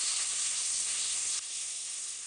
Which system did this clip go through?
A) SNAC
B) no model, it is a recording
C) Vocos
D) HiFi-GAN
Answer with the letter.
A